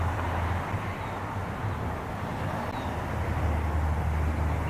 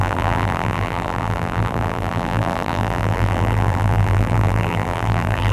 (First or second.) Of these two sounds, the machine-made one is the second